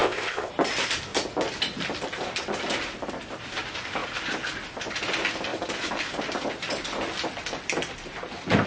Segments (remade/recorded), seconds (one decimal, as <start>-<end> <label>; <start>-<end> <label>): 0.0-0.5 remade; 0.5-8.7 recorded